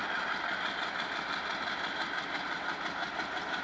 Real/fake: real